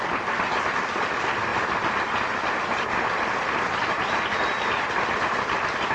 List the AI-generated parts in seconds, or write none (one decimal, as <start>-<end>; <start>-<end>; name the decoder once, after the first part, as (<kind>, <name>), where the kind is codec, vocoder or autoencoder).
none